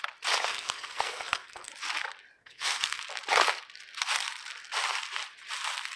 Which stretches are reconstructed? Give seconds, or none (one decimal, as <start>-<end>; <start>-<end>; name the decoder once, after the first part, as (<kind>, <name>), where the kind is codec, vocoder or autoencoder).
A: 0.5-1.7 (codec, SNAC); 2.4-3.0

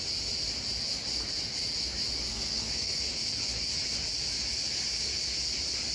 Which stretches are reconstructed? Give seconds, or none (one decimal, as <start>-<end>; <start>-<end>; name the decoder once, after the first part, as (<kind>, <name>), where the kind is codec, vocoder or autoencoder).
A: 2.3-3.1 (codec, SNAC)

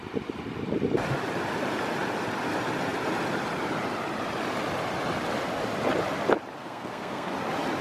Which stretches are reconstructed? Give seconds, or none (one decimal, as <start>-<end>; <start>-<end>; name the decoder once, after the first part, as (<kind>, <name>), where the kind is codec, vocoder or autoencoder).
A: 6.6-7.3 (codec, SNAC)